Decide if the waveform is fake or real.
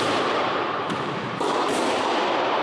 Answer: fake